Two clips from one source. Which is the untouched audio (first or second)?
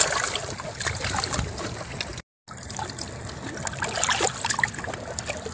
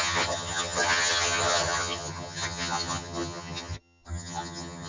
first